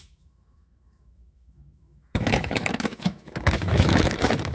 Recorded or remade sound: remade